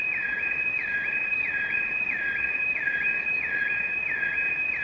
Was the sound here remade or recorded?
remade